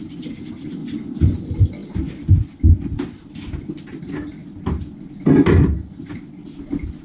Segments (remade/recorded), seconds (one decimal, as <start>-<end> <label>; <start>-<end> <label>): 0.0-0.8 recorded; 0.8-1.4 remade; 1.4-7.0 recorded